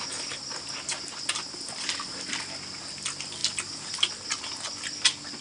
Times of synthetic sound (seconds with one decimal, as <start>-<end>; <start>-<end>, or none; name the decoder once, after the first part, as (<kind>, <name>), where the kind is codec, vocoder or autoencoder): none